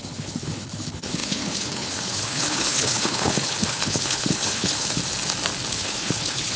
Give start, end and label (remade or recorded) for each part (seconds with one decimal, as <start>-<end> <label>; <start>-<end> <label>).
0.0-5.0 remade; 5.0-5.7 recorded; 5.7-6.6 remade